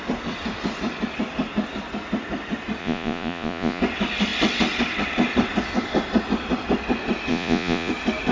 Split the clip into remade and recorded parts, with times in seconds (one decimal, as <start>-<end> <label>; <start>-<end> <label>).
0.0-2.8 recorded; 2.8-3.8 remade; 3.8-7.3 recorded; 7.3-7.9 remade; 7.9-8.3 recorded